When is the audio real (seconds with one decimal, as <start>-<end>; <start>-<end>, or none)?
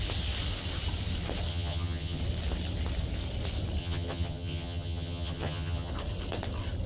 0.0-1.5; 2.2-3.8; 5.9-6.9